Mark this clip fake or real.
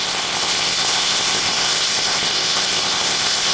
fake